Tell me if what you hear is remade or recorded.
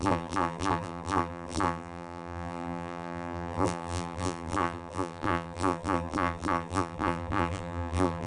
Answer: remade